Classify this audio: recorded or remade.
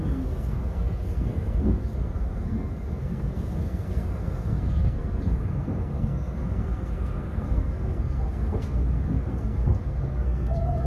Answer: remade